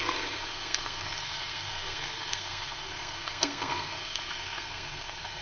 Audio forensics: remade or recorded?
remade